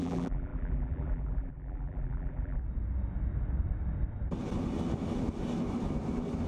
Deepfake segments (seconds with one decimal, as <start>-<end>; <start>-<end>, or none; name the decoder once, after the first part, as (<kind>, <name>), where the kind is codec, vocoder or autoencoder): 0.0-2.6 (vocoder, BigVGAN v2)